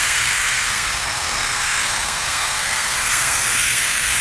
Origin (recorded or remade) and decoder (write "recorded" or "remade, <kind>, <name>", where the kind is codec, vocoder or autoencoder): remade, codec, SNAC